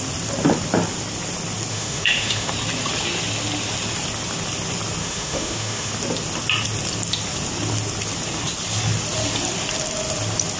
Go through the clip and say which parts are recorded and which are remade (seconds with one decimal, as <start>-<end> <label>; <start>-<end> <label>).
0.0-1.7 recorded; 1.7-2.5 remade; 2.5-5.0 recorded; 5.0-5.9 remade; 5.9-10.6 recorded